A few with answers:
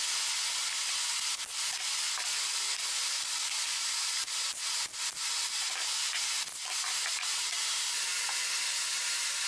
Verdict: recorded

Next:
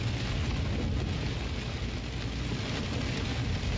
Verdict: recorded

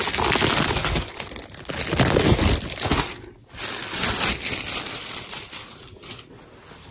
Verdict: recorded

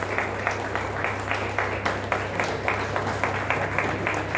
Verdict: recorded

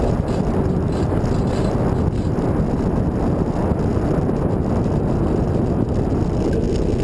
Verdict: recorded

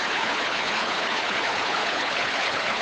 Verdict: remade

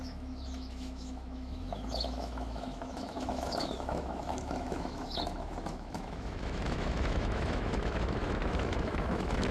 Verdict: remade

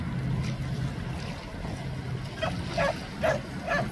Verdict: recorded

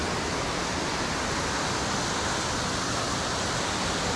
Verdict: remade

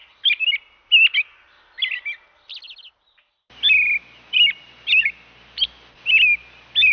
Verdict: recorded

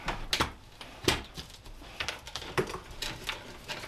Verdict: recorded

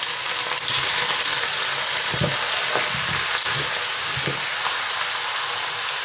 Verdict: recorded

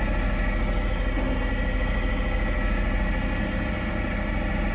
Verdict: recorded